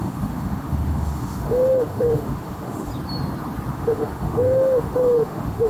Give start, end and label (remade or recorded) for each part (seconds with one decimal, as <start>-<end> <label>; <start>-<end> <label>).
0.0-2.9 remade; 2.9-3.7 recorded; 3.7-5.7 remade